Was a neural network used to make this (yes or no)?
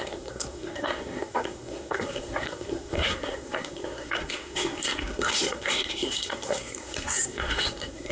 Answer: yes